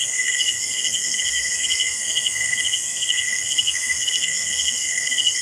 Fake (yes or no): yes